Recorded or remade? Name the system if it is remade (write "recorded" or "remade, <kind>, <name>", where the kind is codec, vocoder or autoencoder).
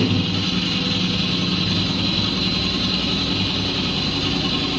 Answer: recorded